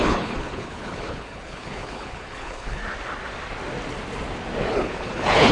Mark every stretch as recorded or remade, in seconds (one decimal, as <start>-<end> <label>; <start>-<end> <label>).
0.0-2.8 remade; 2.8-4.7 recorded; 4.7-5.5 remade